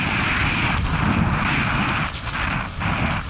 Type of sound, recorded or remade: recorded